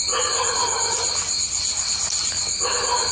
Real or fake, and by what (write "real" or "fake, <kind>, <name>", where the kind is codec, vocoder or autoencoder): real